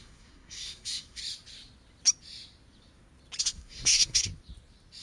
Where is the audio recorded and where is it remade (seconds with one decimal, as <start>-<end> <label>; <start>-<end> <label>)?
0.0-1.2 remade; 1.2-3.4 recorded; 3.4-4.3 remade; 4.3-5.0 recorded